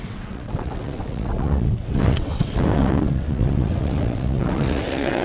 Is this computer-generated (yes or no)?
yes